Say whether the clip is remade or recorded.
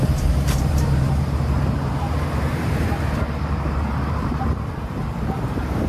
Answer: remade